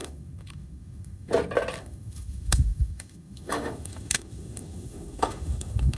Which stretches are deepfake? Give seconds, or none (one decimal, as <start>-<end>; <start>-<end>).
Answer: 0.0-1.3; 1.8-6.0